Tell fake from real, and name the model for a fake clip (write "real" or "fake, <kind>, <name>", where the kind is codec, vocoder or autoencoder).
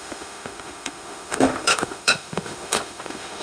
fake, autoencoder, DAC-VAE